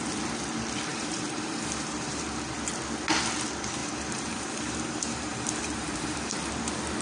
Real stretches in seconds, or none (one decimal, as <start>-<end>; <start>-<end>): 0.0-0.9; 2.5-3.8; 6.5-7.0